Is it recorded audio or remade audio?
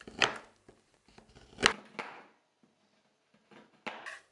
recorded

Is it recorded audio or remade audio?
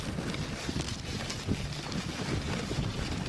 recorded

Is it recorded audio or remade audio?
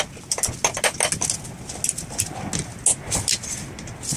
recorded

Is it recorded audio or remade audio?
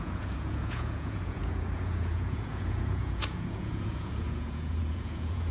remade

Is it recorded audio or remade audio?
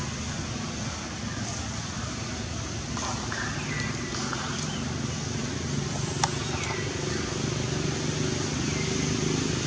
recorded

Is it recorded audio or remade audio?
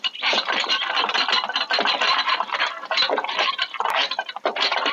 recorded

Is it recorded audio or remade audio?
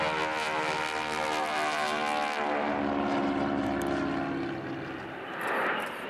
recorded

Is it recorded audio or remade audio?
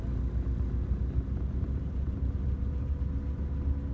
recorded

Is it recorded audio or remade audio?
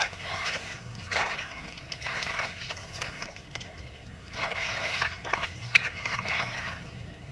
remade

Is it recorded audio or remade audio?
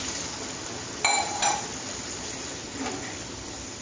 recorded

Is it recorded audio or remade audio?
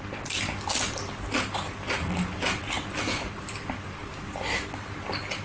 recorded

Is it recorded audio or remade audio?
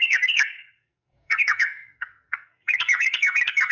remade